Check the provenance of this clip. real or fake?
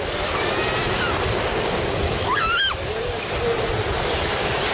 real